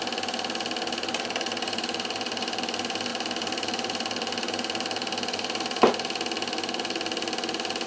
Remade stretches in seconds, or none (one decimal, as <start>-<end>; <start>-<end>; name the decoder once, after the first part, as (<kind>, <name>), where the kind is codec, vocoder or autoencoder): 1.1-2.6 (vocoder, BigVGAN v2); 3.1-5.9

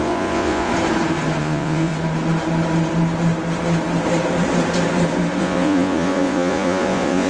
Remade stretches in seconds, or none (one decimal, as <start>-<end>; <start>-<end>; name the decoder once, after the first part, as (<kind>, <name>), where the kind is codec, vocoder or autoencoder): 0.0-0.7 (vocoder, Vocos); 1.4-1.9; 5.4-7.3

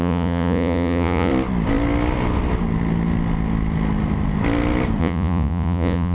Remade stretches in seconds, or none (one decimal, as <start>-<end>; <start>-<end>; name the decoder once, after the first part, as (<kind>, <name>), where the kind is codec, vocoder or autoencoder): 0.0-1.3 (vocoder, Vocos); 5.0-6.1

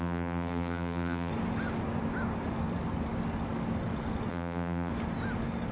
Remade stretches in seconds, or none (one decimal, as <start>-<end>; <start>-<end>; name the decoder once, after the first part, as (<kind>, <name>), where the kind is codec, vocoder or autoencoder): 0.0-1.3 (vocoder, BigVGAN v2); 4.3-4.9

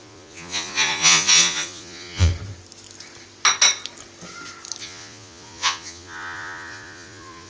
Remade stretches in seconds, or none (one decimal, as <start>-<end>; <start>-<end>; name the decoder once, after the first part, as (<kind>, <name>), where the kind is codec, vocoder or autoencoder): 0.0-2.3 (vocoder, Vocos); 4.8-7.5